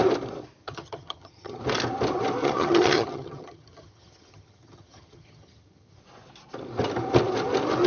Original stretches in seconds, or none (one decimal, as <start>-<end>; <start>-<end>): 0.0-0.6; 1.6-2.4; 6.0-7.9